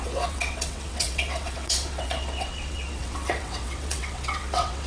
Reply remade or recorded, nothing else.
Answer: remade